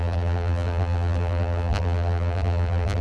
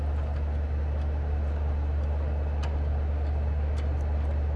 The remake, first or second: first